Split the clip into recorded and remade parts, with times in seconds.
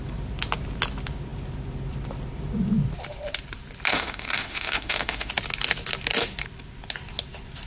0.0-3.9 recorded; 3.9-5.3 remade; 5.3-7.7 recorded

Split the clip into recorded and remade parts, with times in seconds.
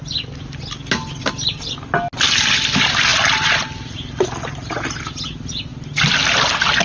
0.0-6.8 recorded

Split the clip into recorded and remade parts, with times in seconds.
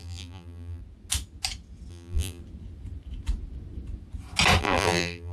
0.0-0.8 remade; 0.8-1.9 recorded; 1.9-2.4 remade; 2.4-4.6 recorded; 4.6-5.3 remade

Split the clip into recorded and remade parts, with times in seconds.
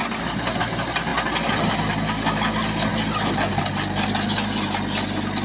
0.0-5.4 recorded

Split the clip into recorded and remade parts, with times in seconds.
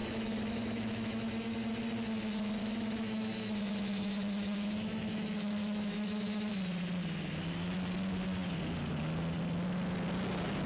0.0-1.7 remade; 1.7-2.6 recorded; 2.6-6.5 remade; 6.5-10.7 recorded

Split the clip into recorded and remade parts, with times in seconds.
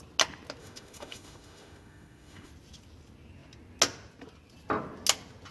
0.0-0.6 recorded; 0.6-2.5 remade; 2.5-5.5 recorded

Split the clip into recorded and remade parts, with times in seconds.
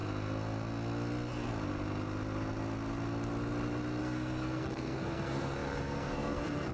0.0-4.0 recorded; 4.0-6.7 remade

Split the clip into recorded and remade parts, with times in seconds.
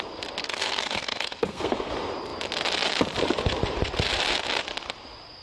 0.0-0.4 recorded; 0.4-1.9 remade; 1.9-5.4 recorded